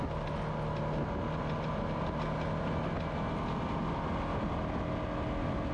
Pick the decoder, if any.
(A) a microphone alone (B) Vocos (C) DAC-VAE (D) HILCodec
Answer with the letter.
A